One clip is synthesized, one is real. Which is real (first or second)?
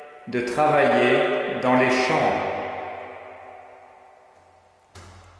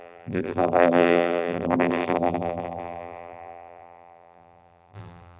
first